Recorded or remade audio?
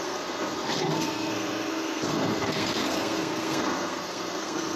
remade